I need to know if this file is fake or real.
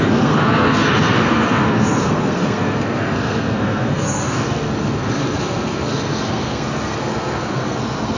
fake